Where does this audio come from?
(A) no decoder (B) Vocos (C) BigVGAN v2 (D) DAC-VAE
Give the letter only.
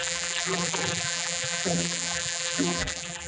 C